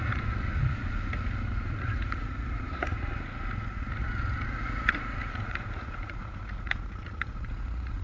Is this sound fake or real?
fake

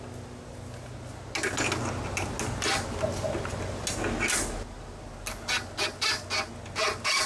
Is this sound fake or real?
real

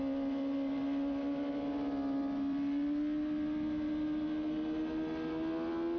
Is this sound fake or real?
real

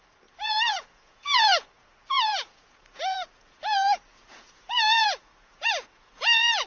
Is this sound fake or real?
fake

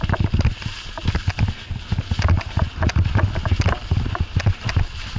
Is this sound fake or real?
real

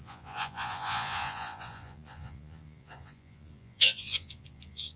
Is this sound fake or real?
fake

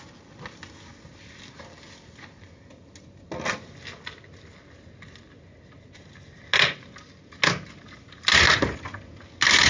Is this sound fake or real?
real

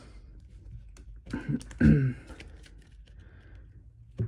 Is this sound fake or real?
real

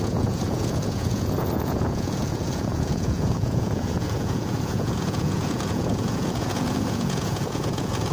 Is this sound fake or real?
fake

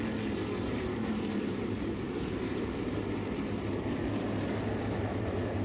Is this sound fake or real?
real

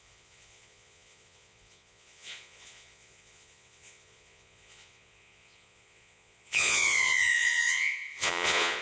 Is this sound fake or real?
fake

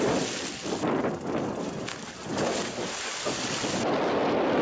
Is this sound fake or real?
real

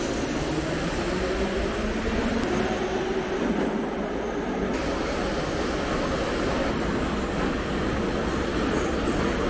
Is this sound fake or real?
real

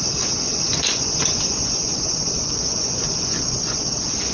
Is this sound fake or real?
fake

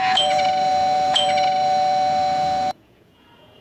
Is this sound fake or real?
fake